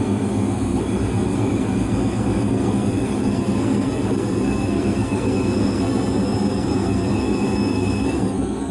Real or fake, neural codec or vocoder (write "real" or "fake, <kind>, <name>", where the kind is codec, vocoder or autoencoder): fake, codec, SNAC